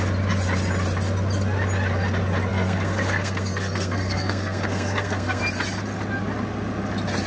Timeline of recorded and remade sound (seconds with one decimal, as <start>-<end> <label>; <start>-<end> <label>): 0.0-2.5 recorded; 2.5-5.4 remade; 5.4-7.3 recorded

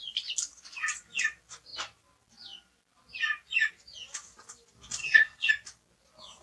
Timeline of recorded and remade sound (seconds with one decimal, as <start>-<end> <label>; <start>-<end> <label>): 0.0-5.0 recorded; 5.0-5.5 remade; 5.5-6.4 recorded

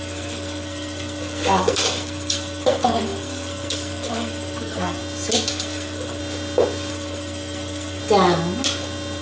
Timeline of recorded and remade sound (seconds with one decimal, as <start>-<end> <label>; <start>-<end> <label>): 0.0-5.0 remade; 5.0-5.5 recorded; 5.5-6.2 remade; 6.2-6.9 recorded; 6.9-8.0 remade; 8.0-9.2 recorded